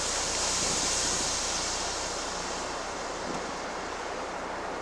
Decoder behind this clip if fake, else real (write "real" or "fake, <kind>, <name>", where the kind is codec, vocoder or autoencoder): fake, vocoder, BigVGAN v2